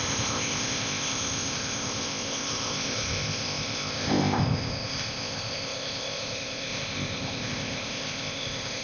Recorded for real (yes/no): no